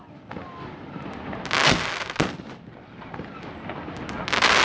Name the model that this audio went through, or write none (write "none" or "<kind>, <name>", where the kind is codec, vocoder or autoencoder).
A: none